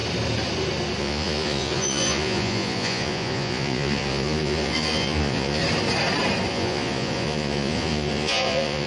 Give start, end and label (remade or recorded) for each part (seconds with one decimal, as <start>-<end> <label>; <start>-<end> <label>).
0.0-1.0 recorded; 1.0-5.6 remade; 5.6-6.5 recorded; 6.5-8.9 remade